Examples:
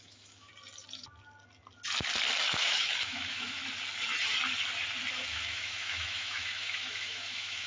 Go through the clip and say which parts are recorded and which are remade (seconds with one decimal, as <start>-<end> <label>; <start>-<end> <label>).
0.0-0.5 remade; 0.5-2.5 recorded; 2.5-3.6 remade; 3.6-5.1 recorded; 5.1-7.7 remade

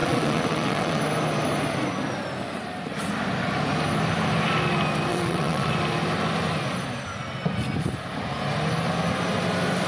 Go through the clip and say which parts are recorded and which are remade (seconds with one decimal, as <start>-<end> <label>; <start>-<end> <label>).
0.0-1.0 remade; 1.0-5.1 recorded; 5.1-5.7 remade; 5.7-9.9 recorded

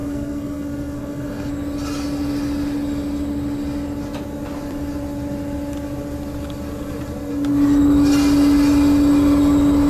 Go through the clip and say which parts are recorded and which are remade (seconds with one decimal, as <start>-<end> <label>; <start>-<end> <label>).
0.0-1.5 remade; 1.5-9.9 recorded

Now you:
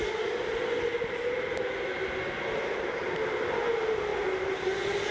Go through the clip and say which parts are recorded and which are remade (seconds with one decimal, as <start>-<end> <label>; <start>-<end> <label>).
0.0-2.6 recorded; 2.6-4.1 remade; 4.1-5.1 recorded

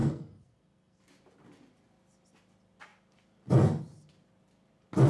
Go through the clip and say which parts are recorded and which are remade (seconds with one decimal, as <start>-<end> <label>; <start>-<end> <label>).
0.0-1.0 remade; 1.0-5.1 recorded

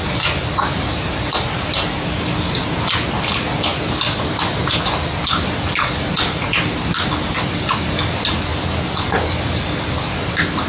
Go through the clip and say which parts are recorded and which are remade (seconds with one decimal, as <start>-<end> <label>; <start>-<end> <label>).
0.0-10.7 recorded